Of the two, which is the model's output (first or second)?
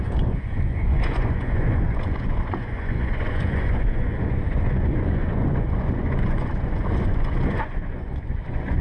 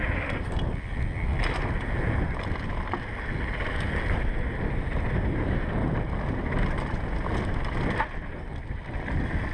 first